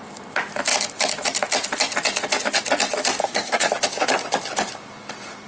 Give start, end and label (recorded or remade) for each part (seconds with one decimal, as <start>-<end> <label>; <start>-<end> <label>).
0.0-3.2 recorded; 3.2-3.7 remade; 3.7-5.5 recorded